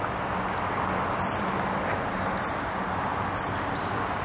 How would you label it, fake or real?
real